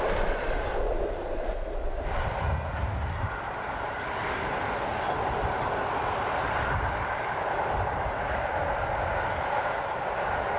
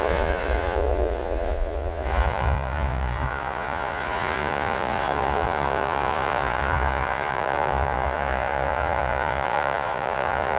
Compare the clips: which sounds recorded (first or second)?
first